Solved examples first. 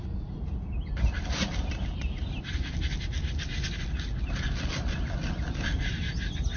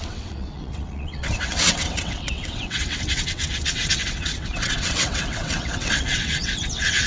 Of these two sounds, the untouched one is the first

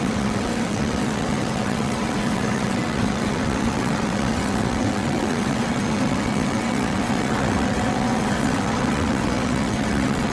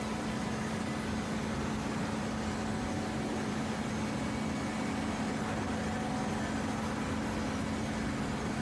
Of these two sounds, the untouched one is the second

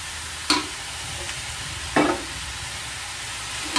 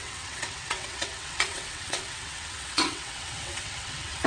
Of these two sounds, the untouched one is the first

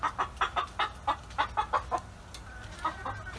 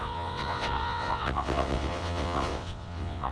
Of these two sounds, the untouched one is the first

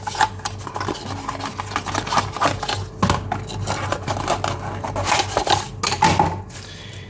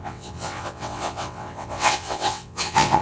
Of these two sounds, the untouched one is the first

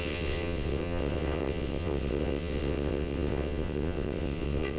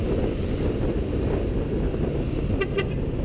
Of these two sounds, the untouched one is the second